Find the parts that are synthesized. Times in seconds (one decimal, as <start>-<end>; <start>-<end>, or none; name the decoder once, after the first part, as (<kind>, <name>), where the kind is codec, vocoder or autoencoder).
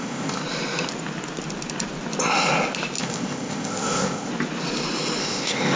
0.0-0.4 (codec, ZipCodec); 3.0-4.3; 5.2-5.8